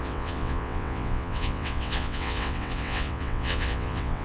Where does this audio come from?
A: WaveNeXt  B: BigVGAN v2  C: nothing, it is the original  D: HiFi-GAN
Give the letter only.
A